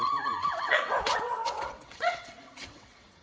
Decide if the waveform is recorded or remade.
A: remade